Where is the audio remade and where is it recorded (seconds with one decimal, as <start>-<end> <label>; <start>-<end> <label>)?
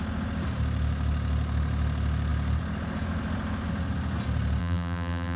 0.0-4.6 recorded; 4.6-5.4 remade